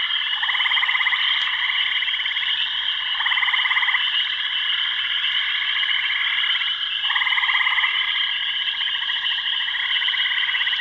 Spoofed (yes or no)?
no